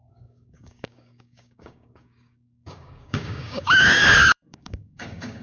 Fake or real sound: fake